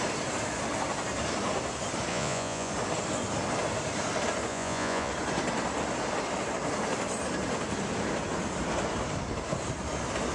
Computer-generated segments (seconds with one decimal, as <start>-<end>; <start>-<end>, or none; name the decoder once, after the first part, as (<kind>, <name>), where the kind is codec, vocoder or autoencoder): 2.1-2.7 (vocoder, Vocos); 4.5-5.1